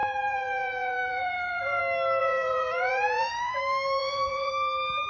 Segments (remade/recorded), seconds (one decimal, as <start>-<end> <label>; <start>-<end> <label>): 0.0-1.8 remade; 1.8-2.2 recorded; 2.2-3.6 remade; 3.6-4.0 recorded; 4.0-4.5 remade; 4.5-5.1 recorded